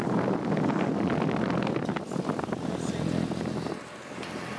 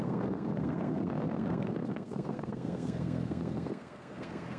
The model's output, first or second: second